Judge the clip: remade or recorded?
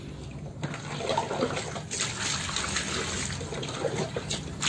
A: recorded